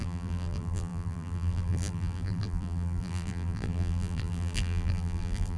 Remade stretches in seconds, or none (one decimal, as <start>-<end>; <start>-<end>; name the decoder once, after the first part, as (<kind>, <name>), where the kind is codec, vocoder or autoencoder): 0.0-5.6 (vocoder, BigVGAN v2)